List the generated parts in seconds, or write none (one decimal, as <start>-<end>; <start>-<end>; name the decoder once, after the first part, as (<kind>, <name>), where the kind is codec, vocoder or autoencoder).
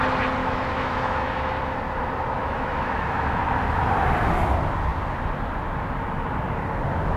0.4-1.6 (autoencoder, DAC-VAE); 2.4-3.4